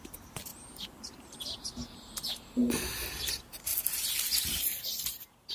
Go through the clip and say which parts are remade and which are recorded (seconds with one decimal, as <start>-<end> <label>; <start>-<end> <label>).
0.0-2.6 remade; 2.6-3.2 recorded; 3.2-3.7 remade; 3.7-5.5 recorded